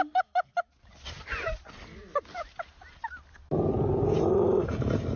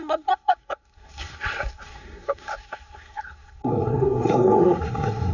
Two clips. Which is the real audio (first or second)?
first